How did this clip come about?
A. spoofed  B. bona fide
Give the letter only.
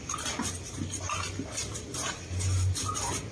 B